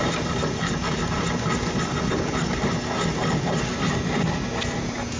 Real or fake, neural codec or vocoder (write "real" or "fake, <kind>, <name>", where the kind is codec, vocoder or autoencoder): real